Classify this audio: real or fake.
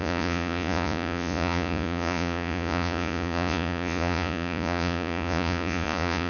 fake